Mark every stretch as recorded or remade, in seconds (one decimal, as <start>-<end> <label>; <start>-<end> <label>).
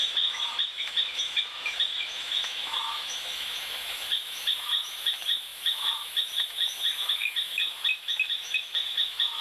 0.0-9.4 remade